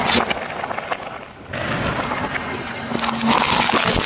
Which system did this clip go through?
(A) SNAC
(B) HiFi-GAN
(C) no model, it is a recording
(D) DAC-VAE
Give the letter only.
C